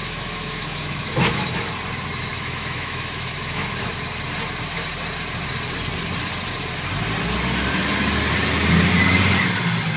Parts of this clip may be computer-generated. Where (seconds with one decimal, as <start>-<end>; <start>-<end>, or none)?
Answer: 0.0-1.7; 2.3-3.9